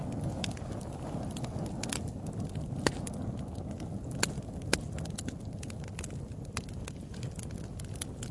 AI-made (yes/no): no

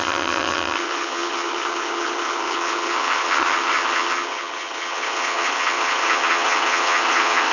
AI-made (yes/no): yes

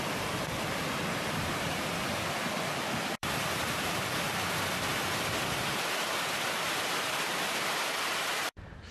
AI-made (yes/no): yes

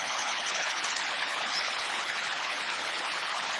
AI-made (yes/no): yes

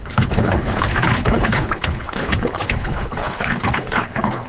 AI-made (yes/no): yes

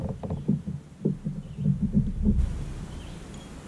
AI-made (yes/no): no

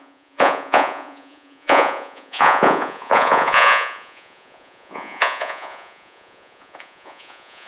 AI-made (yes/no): yes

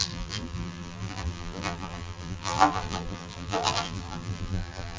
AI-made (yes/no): yes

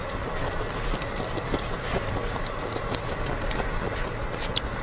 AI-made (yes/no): no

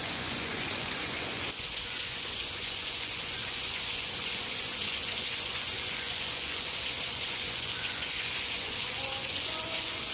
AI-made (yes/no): yes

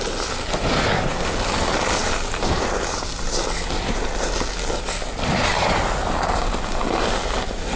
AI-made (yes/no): no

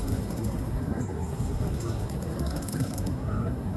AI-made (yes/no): yes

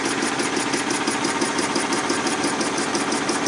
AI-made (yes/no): no